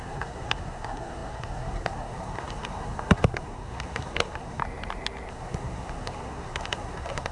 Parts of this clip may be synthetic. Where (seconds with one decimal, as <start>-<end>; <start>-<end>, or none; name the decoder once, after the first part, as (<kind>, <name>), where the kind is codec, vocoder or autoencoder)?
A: 0.0-4.6 (codec, SNAC); 5.3-7.3